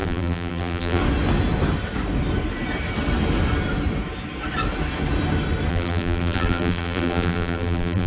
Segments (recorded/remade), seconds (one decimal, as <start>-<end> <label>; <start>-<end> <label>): 0.0-1.0 remade; 1.0-5.7 recorded; 5.7-8.1 remade